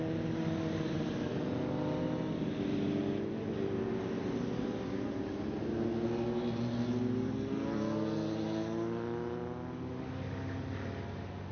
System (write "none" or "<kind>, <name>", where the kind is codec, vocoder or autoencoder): none